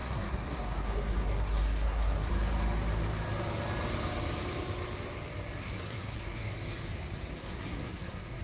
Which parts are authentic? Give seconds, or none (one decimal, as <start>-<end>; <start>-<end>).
2.3-5.6; 6.5-7.4